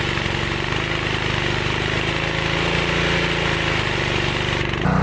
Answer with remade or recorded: recorded